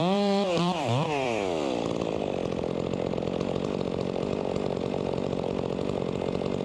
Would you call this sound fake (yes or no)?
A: yes